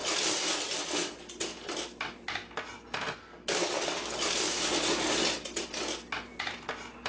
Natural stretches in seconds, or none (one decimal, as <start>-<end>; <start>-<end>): 0.0-7.1